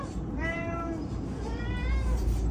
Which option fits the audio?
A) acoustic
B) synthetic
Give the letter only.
B